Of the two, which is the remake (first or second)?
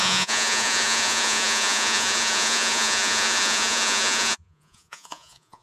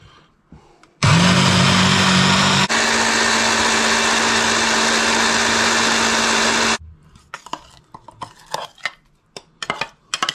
first